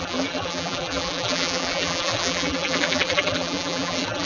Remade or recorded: remade